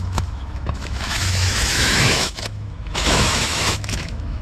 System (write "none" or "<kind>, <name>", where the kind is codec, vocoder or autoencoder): autoencoder, DAC-VAE